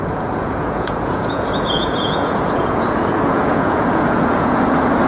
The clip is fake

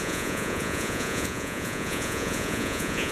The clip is fake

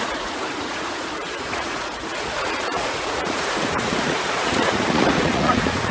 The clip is fake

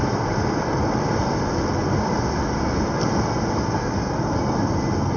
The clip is real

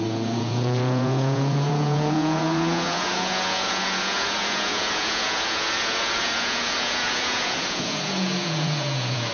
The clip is fake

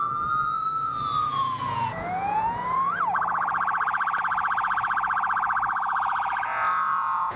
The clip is fake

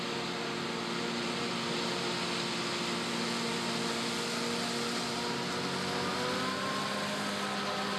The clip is real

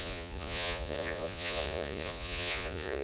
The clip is fake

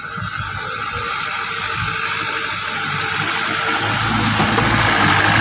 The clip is real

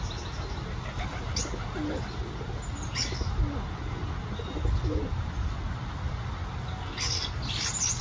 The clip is real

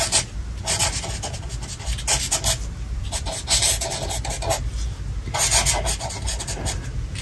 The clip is real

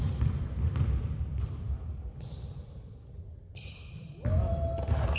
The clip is real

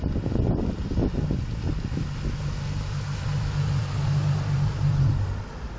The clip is real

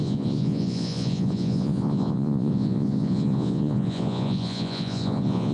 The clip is fake